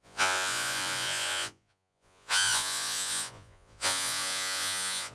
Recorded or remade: remade